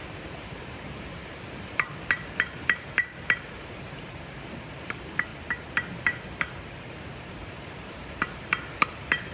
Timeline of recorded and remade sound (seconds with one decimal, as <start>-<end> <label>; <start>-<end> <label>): 0.0-5.3 remade; 5.3-7.0 recorded; 7.0-9.3 remade